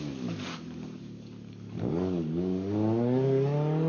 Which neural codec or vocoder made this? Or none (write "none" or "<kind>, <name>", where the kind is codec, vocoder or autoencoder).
codec, DAC